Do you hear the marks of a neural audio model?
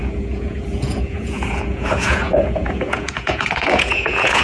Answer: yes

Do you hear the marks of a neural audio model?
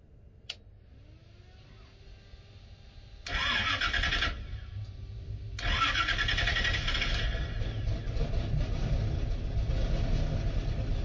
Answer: no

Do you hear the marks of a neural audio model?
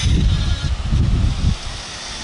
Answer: no